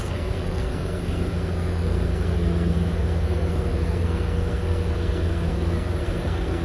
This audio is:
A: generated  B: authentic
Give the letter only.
A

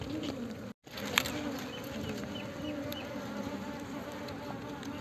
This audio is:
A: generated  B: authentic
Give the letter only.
B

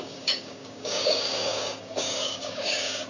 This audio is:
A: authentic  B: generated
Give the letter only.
B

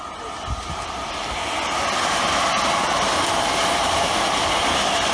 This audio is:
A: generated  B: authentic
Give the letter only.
B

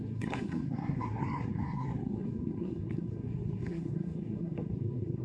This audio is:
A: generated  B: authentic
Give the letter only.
A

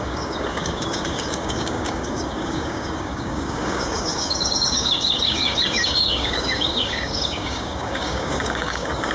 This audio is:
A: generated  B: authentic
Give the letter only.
A